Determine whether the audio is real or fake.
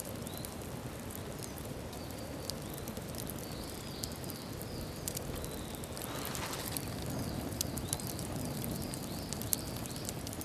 fake